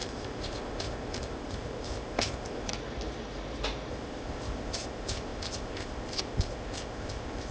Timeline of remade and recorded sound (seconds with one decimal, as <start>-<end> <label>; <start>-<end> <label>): 0.0-2.7 remade; 2.7-3.9 recorded; 3.9-7.5 remade